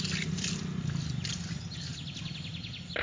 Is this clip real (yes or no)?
yes